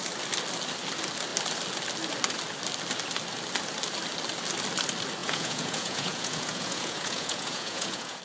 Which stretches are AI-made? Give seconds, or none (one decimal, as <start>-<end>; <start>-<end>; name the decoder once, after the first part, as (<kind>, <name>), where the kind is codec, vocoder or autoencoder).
5.2-8.2 (vocoder, Vocos)